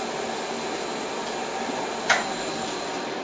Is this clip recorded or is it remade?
recorded